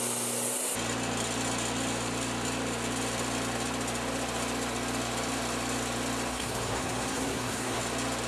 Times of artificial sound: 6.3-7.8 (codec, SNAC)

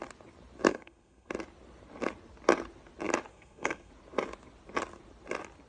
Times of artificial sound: 0.7-1.3 (codec, SNAC); 3.3-3.9

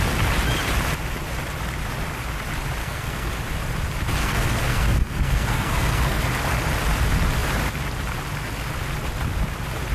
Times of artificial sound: 2.8-3.3 (codec, SNAC); 4.2-6.2

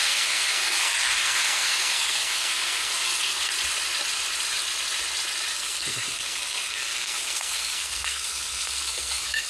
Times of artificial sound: 0.0-3.5 (codec, SNAC); 5.5-9.5

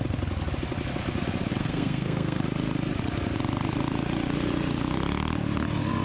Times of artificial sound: 1.6-2.4 (codec, SNAC)